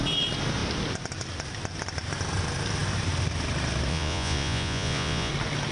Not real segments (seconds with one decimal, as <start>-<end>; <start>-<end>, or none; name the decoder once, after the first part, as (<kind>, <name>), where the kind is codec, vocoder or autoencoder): 3.9-5.3 (vocoder, Vocos)